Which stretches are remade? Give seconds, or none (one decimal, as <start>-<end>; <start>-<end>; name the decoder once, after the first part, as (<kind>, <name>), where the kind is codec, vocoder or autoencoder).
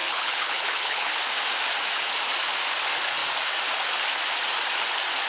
0.0-1.1 (codec, HILCodec)